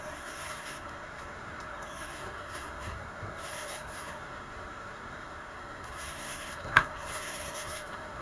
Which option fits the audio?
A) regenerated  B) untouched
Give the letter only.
A